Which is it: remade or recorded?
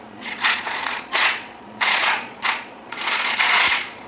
remade